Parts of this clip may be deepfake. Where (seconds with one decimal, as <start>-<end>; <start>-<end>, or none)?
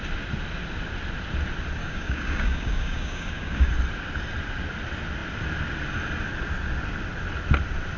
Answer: 1.8-3.7